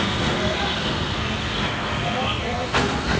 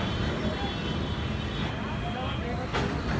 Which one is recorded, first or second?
second